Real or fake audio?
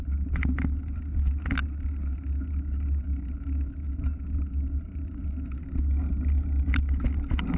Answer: real